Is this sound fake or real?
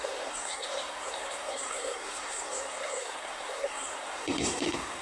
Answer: fake